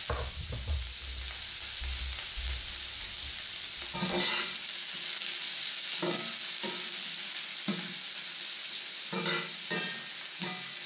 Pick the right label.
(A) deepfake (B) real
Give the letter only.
B